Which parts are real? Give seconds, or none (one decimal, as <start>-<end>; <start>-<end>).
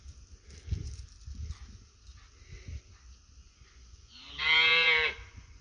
0.0-3.4